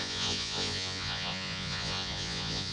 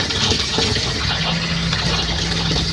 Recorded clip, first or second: second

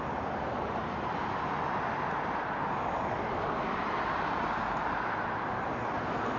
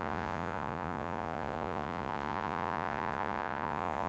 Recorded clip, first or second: first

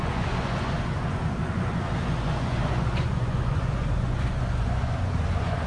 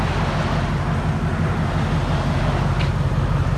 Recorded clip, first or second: second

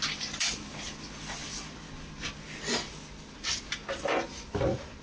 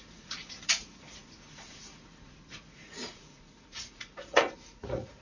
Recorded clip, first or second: first